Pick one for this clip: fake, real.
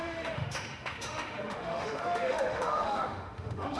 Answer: fake